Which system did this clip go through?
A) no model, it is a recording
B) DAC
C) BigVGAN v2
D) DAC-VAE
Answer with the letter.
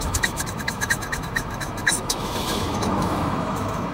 D